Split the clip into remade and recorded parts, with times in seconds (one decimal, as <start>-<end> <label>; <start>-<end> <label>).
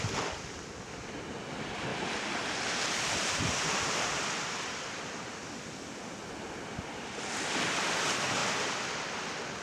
0.0-1.9 recorded; 1.9-3.5 remade; 3.5-9.6 recorded